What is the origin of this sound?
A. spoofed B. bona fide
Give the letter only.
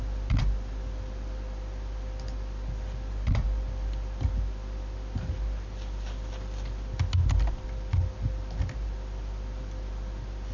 B